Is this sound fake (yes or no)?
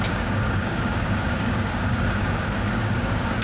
yes